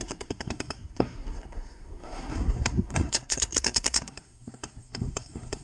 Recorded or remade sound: remade